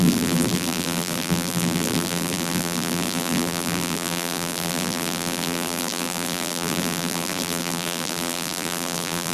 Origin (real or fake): fake